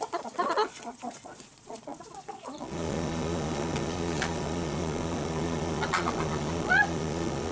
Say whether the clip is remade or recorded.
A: remade